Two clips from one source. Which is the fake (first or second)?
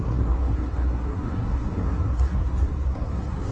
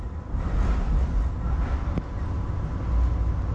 first